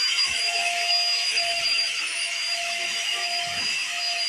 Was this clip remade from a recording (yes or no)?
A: yes